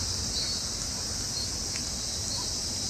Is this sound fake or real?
real